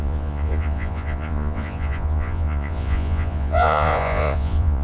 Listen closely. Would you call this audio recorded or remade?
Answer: remade